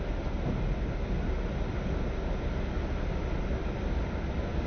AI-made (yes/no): no